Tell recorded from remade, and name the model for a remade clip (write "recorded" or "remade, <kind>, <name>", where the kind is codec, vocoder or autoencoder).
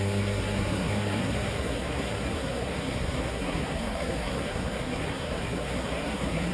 remade, codec, SNAC